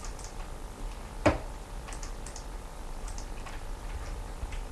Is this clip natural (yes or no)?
yes